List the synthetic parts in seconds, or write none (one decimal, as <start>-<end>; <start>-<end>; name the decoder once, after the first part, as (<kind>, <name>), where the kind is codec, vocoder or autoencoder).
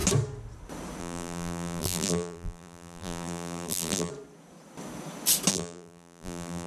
1.0-4.1 (vocoder, BigVGAN v2); 5.5-6.7